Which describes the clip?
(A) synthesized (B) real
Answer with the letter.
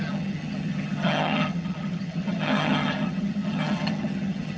A